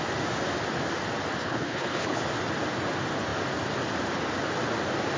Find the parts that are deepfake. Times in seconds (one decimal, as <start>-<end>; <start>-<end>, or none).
1.4-2.2